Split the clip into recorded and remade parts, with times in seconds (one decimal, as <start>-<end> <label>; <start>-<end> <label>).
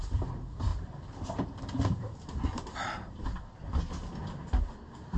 0.0-0.7 recorded; 0.7-3.8 remade; 3.8-5.2 recorded